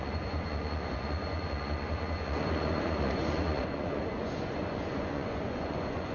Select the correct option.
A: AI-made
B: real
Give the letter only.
A